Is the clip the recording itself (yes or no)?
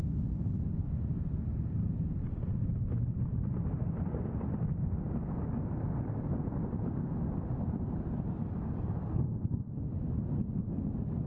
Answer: yes